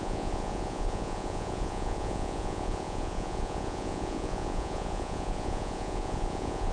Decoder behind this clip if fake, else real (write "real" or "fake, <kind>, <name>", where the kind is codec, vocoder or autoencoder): fake, vocoder, Vocos